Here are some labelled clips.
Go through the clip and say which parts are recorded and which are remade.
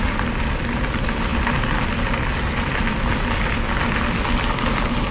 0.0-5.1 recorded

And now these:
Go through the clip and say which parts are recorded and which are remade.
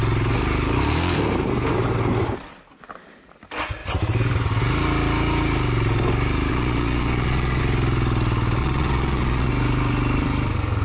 0.0-6.5 recorded; 6.5-7.6 remade; 7.6-8.6 recorded; 8.6-9.5 remade; 9.5-10.8 recorded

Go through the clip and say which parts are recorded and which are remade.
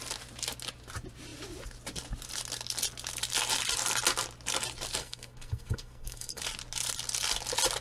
0.0-5.0 recorded; 5.0-6.4 remade; 6.4-7.8 recorded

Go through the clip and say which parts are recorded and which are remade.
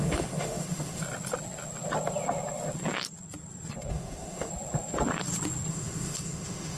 0.0-1.0 remade; 1.0-3.9 recorded; 3.9-4.5 remade; 4.5-5.7 recorded; 5.7-6.8 remade